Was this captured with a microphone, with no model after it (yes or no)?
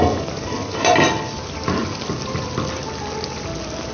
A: yes